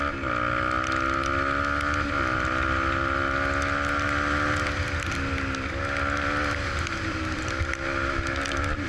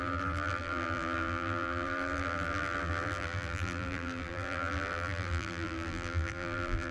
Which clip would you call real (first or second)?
first